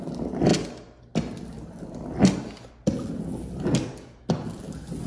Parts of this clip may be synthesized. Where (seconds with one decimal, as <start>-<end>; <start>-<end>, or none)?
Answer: none